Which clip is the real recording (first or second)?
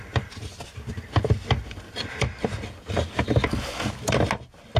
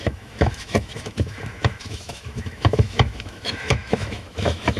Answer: first